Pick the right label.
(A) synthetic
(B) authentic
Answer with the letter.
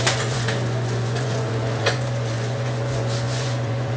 A